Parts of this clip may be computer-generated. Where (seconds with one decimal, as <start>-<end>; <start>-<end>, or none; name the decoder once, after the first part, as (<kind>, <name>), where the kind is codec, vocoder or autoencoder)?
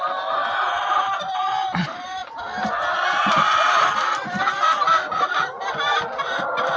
0.0-0.4 (vocoder, BigVGAN v2); 1.4-6.8